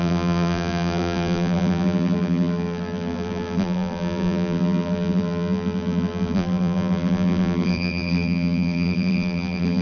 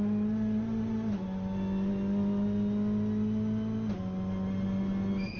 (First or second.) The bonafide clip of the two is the second